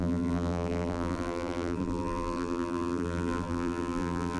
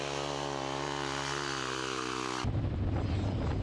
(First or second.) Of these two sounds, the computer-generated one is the first